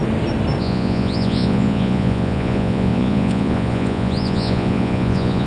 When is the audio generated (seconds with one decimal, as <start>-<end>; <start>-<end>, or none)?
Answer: 0.6-5.5